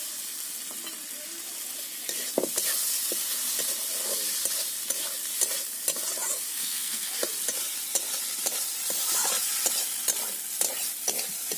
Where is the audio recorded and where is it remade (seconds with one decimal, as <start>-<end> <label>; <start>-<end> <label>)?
0.0-6.5 recorded; 6.5-7.1 remade; 7.1-11.6 recorded